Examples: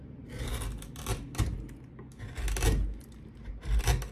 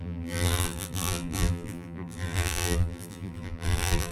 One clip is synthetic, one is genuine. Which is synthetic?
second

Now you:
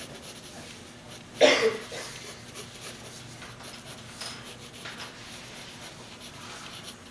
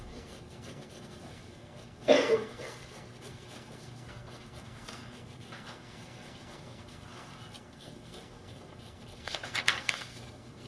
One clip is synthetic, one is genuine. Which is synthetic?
second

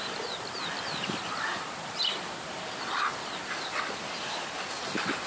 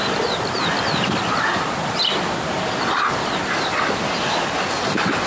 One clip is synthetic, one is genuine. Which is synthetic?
first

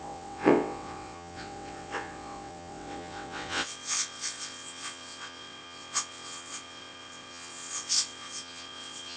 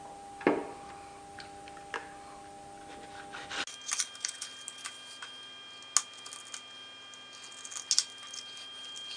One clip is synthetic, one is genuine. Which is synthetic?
first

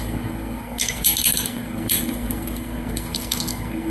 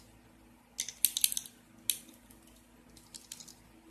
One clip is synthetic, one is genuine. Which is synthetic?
first